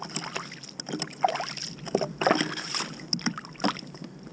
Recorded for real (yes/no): yes